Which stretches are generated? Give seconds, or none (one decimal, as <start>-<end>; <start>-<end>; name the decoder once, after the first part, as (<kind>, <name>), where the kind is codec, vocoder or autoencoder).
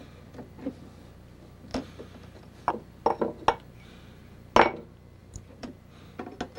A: 1.7-2.7 (vocoder, BigVGAN v2); 5.2-5.7